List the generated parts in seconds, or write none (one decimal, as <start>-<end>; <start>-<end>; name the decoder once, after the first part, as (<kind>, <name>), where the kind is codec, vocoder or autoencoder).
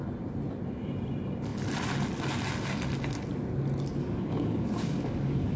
4.0-5.6 (codec, DAC)